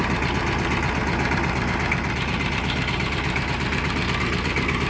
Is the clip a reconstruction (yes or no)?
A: no